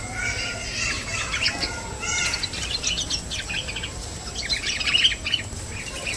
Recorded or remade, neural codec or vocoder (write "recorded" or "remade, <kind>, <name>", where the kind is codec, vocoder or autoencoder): recorded